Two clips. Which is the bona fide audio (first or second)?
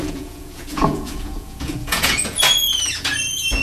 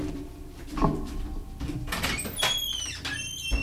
second